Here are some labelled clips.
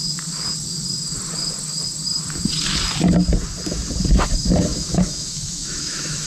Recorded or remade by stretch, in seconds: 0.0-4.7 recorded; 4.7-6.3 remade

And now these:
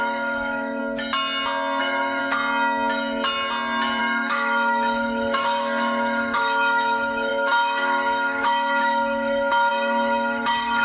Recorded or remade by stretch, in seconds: 0.0-0.8 remade; 0.8-1.8 recorded; 1.8-2.2 remade; 2.2-4.0 recorded; 4.0-10.8 remade

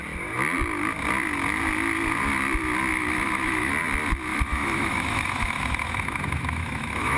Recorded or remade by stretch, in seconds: 0.0-2.9 recorded; 2.9-3.7 remade; 3.7-4.3 recorded; 4.3-7.2 remade

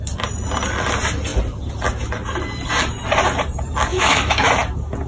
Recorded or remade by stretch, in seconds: 0.0-3.9 recorded; 3.9-4.5 remade; 4.5-5.1 recorded

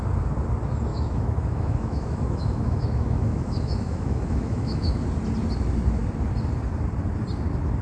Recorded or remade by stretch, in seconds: 0.0-0.9 recorded; 0.9-5.0 remade; 5.0-7.8 recorded

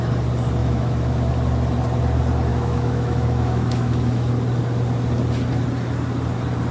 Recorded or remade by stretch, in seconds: 0.0-0.6 recorded; 0.6-1.3 remade; 1.3-2.5 recorded; 2.5-4.3 remade; 4.3-6.7 recorded

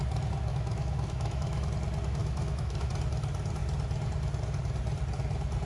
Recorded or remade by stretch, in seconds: 0.0-0.5 recorded; 0.5-1.7 remade; 1.7-2.2 recorded; 2.2-2.9 remade; 2.9-5.7 recorded

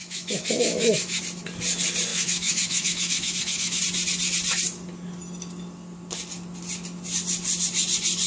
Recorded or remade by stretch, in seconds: 0.0-1.2 remade; 1.2-2.1 recorded; 2.1-3.8 remade; 3.8-8.3 recorded